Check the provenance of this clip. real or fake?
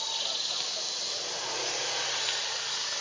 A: real